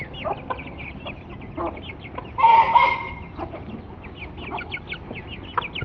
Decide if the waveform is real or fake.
real